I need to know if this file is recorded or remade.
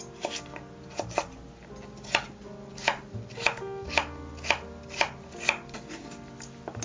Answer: recorded